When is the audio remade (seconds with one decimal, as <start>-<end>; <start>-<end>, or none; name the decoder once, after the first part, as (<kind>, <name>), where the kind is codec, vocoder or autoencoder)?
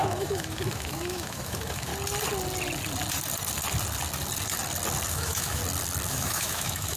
0.0-1.9 (autoencoder, DAC-VAE); 5.1-5.6; 6.1-7.0